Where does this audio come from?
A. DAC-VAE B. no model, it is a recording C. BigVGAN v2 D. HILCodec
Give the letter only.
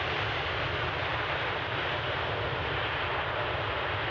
B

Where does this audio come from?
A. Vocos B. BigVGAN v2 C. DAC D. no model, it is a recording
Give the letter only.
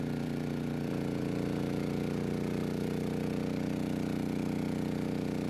B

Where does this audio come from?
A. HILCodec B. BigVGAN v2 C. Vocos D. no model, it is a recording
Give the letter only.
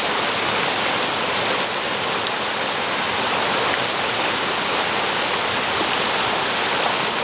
D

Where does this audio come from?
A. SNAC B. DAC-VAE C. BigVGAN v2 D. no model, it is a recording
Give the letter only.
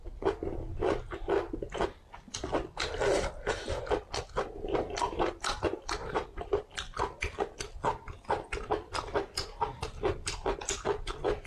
D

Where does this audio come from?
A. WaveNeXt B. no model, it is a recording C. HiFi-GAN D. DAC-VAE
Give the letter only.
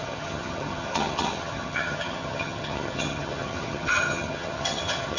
C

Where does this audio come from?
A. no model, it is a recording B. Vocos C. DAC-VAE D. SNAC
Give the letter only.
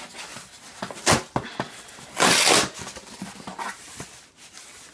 A